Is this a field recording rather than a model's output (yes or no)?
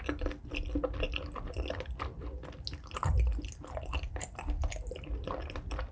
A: yes